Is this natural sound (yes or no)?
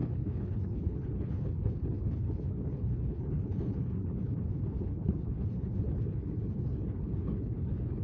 no